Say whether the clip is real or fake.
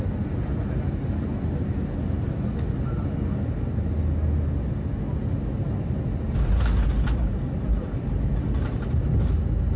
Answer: real